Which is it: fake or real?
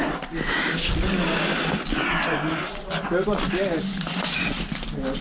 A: real